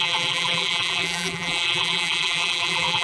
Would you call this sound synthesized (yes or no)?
yes